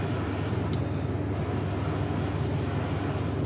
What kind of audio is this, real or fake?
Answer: real